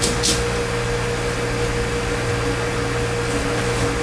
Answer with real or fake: real